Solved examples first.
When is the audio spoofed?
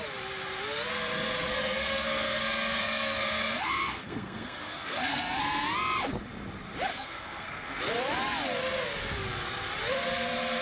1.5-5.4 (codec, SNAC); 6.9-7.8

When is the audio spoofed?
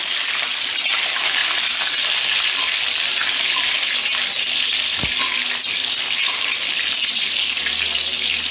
none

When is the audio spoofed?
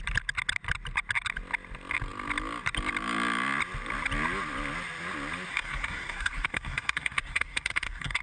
5.5-8.2 (codec, SNAC)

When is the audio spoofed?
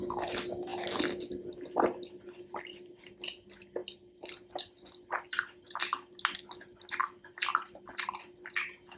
none